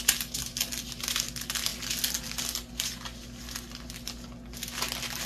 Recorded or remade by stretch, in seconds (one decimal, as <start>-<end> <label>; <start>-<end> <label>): 0.0-5.3 recorded